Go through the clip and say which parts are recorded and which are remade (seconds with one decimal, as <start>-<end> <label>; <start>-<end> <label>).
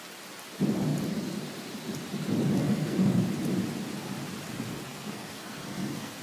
0.0-2.6 recorded; 2.6-3.2 remade; 3.2-4.7 recorded; 4.7-6.2 remade